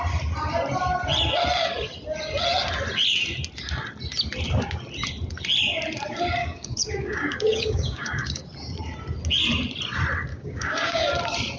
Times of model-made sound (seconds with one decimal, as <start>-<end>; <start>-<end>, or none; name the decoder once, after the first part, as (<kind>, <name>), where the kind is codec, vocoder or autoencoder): 6.4-8.4 (codec, DAC); 10.3-11.1

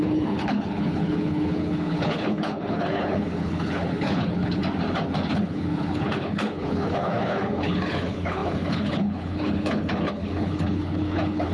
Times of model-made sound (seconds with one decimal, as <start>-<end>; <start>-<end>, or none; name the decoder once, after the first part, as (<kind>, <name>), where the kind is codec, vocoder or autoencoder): 0.0-4.6 (codec, HILCodec); 5.3-11.5